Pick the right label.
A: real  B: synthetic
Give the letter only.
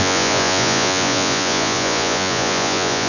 B